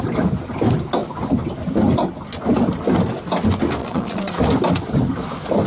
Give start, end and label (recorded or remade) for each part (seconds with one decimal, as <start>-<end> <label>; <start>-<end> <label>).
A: 0.0-3.8 recorded; 3.8-4.3 remade; 4.3-5.7 recorded

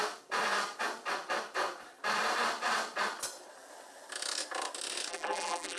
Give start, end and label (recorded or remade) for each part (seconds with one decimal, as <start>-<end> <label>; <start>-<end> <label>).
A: 0.0-5.1 recorded; 5.1-5.8 remade

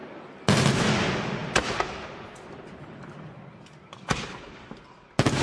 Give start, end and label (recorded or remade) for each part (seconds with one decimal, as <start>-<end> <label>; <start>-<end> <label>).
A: 0.0-0.9 remade; 0.9-5.4 recorded

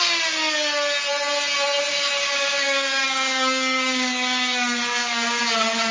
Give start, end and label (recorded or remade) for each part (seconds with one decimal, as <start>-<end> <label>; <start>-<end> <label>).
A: 0.0-1.9 recorded; 1.9-5.4 remade; 5.4-5.9 recorded

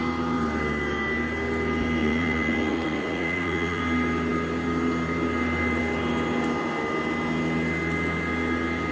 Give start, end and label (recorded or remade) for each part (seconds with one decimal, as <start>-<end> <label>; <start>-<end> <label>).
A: 0.0-2.0 recorded; 2.0-3.8 remade; 3.8-8.9 recorded

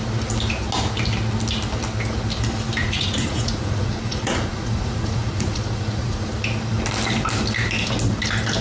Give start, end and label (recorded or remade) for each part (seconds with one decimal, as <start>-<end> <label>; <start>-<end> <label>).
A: 0.0-2.8 recorded; 2.8-6.3 remade; 6.3-8.6 recorded

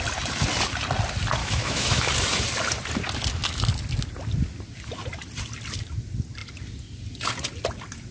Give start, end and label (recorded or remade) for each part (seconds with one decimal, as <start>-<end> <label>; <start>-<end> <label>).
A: 0.0-1.4 recorded; 1.4-2.1 remade; 2.1-8.1 recorded

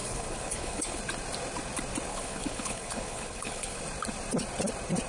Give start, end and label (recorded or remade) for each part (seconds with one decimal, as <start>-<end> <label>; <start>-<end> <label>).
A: 0.0-1.0 remade; 1.0-2.1 recorded; 2.1-3.8 remade; 3.8-5.1 recorded